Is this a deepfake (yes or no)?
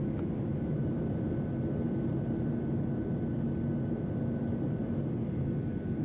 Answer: no